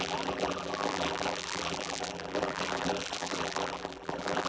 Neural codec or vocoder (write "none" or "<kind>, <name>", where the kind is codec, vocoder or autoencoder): vocoder, BigVGAN v2